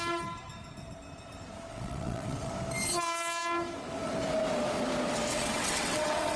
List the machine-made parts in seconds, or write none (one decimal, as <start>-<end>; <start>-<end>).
1.7-2.5; 5.3-6.4

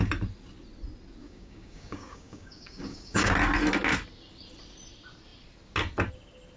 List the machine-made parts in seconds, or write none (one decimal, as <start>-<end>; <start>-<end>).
1.2-3.3